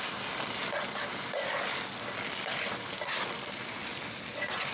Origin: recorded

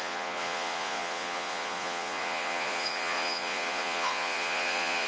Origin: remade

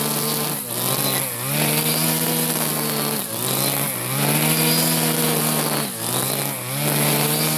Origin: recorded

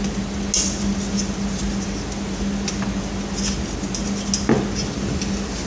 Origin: recorded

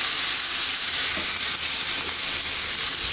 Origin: recorded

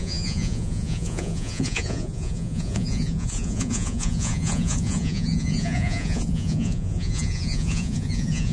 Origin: remade